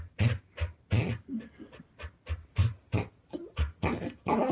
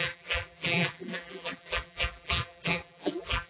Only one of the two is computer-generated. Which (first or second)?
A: second